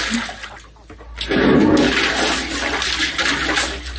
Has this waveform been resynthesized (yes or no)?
no